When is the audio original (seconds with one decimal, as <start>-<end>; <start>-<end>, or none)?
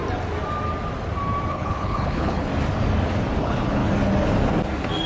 0.0-1.5; 2.5-3.4; 3.8-5.1